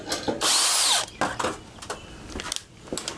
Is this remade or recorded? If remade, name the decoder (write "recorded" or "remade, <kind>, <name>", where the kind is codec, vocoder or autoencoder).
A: recorded